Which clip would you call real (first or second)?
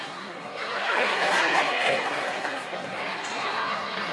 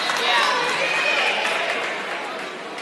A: second